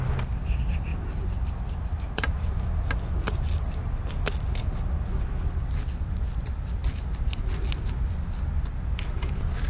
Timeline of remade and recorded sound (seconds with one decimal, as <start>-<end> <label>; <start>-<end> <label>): 0.0-9.7 recorded